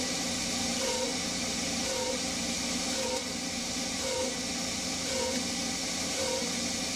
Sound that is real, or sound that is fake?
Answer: real